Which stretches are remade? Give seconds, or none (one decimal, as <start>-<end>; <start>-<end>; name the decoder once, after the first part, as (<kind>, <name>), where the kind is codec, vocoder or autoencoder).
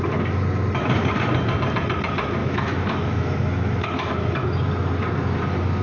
2.4-4.1 (autoencoder, DAC-VAE)